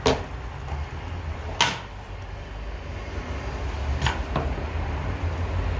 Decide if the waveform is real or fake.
real